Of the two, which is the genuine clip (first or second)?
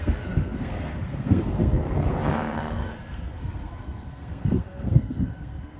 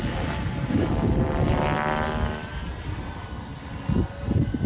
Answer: second